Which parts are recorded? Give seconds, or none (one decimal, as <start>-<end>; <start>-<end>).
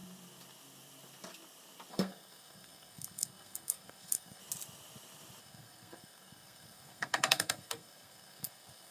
0.0-1.9; 4.4-5.4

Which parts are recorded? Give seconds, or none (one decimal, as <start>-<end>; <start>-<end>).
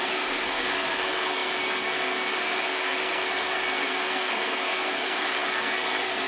none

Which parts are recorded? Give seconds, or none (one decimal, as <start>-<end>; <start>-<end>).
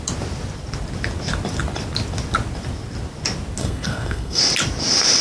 0.0-3.6; 4.4-5.2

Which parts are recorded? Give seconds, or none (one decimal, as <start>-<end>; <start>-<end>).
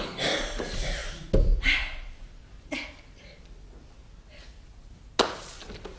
0.0-6.0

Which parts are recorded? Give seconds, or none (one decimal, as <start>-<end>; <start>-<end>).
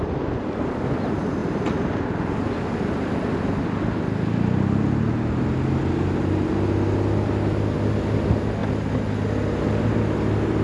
0.0-10.6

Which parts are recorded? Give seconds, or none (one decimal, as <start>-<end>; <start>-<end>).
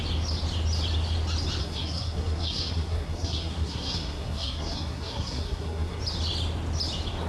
0.0-1.6; 6.0-7.3